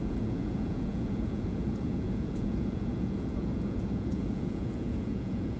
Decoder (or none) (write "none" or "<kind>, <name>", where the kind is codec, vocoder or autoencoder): vocoder, Vocos